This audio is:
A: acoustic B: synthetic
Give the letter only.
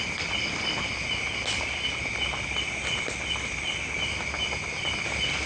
A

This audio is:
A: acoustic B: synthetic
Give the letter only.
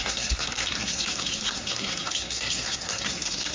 B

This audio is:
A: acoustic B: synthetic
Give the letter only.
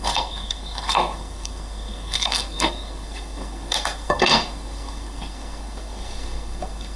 B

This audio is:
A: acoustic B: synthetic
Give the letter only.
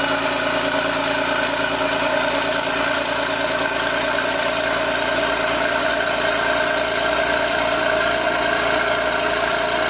B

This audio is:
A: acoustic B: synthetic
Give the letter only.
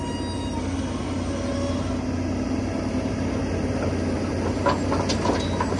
A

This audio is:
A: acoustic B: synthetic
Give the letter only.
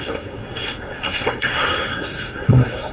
B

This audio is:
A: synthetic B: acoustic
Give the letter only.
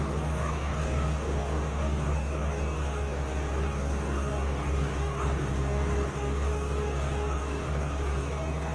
A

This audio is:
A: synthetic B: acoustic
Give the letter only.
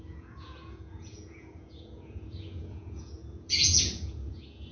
A